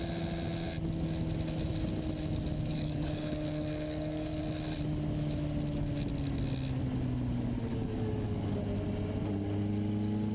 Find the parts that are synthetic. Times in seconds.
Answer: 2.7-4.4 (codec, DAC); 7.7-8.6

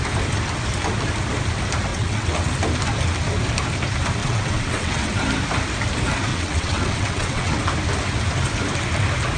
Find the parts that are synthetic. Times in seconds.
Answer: 1.9-2.5 (vocoder, WaveNeXt); 4.2-5.1; 6.3-7.6